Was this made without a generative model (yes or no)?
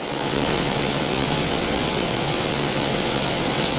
no